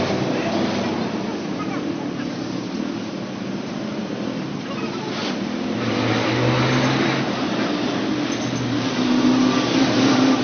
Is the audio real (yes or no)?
yes